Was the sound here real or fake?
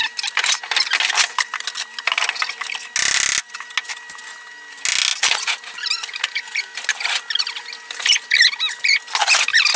real